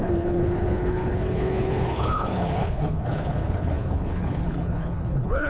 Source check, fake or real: fake